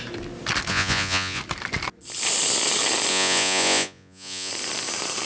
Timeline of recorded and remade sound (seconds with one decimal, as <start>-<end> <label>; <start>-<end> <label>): 0.0-0.7 recorded; 0.7-1.4 remade; 1.4-3.1 recorded; 3.1-4.5 remade; 4.5-5.3 recorded